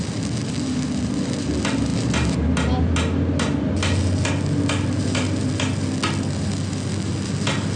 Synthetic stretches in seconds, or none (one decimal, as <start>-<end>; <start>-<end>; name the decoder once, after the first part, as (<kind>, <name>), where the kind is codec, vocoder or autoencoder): none